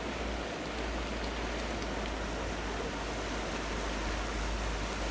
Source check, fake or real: real